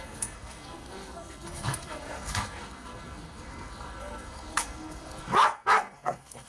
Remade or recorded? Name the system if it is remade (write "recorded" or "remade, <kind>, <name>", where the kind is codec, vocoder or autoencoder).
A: remade, codec, SNAC